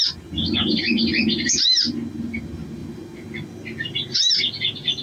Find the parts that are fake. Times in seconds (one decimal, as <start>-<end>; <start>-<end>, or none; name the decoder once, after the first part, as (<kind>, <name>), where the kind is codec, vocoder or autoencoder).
none